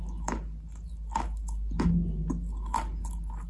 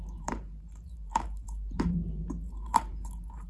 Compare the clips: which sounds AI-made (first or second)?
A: second